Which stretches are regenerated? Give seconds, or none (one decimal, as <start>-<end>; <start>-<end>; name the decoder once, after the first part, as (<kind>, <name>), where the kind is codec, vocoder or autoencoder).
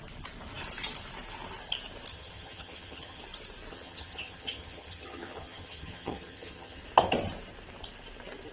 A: 2.1-3.2 (vocoder, HiFi-GAN); 3.7-6.8